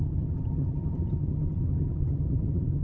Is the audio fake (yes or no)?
yes